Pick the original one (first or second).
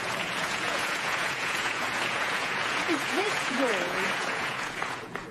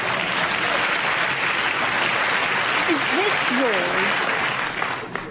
second